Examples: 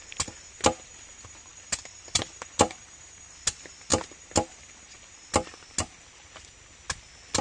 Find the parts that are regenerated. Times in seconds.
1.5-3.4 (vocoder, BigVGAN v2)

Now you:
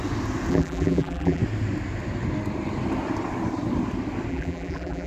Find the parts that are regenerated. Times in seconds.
0.5-1.4 (vocoder, BigVGAN v2); 4.3-5.1

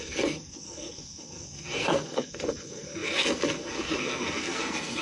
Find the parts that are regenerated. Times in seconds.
0.0-5.0 (codec, SNAC)

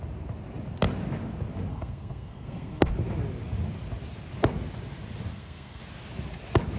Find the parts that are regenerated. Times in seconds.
1.7-2.9 (codec, SNAC); 5.3-5.8

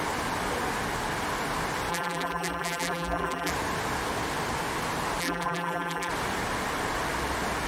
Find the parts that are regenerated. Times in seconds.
1.9-3.5 (vocoder, BigVGAN v2); 5.2-6.1

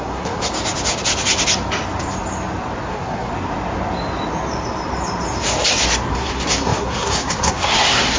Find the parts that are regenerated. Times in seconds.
0.0-0.5 (codec, SNAC); 2.9-3.3; 6.1-8.2